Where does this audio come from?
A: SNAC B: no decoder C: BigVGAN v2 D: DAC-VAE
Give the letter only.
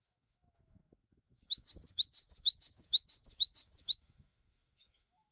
D